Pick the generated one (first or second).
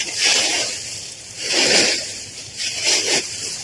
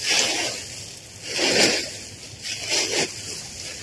first